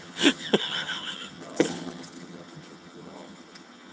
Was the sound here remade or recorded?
remade